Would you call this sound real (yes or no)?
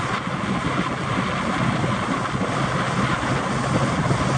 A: yes